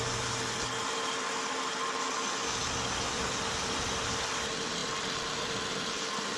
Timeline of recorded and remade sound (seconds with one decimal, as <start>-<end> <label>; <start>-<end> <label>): 0.0-6.4 recorded

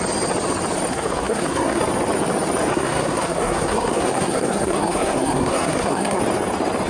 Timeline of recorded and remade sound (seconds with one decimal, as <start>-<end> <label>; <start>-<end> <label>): 0.0-0.9 recorded; 0.9-1.8 remade; 1.8-2.7 recorded; 2.7-6.2 remade; 6.2-6.9 recorded

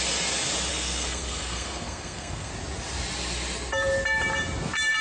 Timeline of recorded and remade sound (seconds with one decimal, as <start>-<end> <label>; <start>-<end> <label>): 0.0-0.7 recorded; 0.7-2.5 remade; 2.5-5.0 recorded

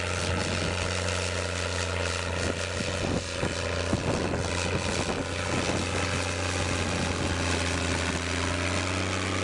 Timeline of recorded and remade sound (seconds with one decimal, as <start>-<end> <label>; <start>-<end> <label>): 0.0-9.4 recorded

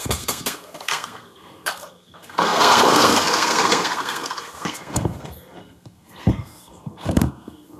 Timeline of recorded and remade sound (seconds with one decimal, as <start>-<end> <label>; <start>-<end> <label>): 0.0-7.8 remade

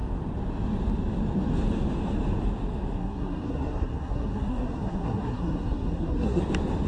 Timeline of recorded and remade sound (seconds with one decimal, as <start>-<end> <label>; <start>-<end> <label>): 0.0-3.0 recorded; 3.0-6.4 remade; 6.4-6.9 recorded

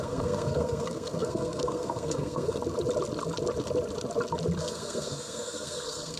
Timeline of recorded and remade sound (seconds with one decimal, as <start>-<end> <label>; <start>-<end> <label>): 0.0-2.6 remade; 2.6-4.6 recorded; 4.6-6.2 remade